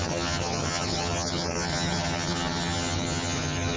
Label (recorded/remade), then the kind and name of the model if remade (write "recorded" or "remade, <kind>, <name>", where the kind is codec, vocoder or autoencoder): remade, vocoder, HiFi-GAN